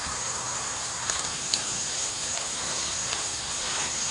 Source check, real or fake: fake